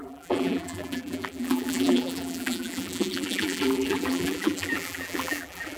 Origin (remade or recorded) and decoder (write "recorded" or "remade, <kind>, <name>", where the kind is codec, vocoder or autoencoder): remade, vocoder, BigVGAN v2